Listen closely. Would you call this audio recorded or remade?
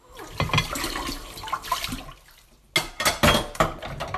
recorded